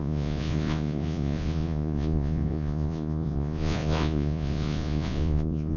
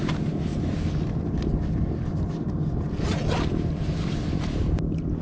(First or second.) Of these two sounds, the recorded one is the second